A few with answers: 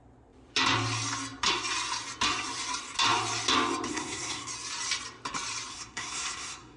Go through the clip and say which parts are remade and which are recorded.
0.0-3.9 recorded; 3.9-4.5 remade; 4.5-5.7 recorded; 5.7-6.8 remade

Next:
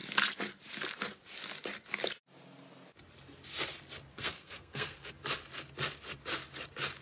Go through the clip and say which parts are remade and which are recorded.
0.0-4.1 recorded; 4.1-5.1 remade; 5.1-7.0 recorded

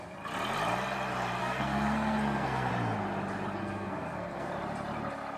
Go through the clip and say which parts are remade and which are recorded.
0.0-1.4 recorded; 1.4-2.7 remade; 2.7-3.6 recorded; 3.6-4.5 remade; 4.5-5.4 recorded

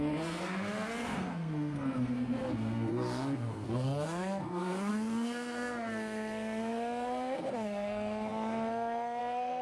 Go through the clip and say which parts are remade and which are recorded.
0.0-9.6 remade